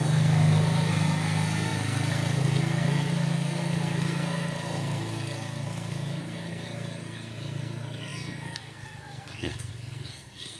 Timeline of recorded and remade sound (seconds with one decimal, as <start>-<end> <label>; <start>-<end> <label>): 0.0-10.6 remade